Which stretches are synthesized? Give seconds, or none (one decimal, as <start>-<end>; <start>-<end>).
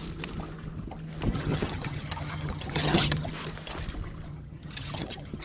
1.3-3.3; 4.3-5.4